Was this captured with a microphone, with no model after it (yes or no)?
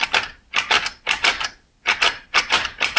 yes